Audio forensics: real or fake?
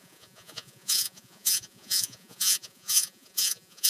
fake